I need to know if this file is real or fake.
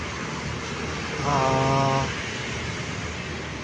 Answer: real